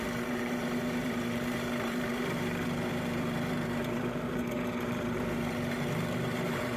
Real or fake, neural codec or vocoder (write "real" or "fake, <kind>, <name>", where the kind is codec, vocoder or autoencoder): fake, vocoder, BigVGAN v2